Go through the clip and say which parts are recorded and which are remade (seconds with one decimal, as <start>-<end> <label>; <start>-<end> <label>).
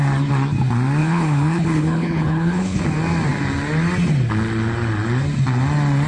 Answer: 0.0-1.0 recorded; 1.0-2.8 remade; 2.8-6.1 recorded